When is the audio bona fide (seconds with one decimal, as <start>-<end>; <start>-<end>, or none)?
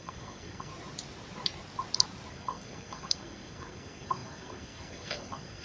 0.7-2.3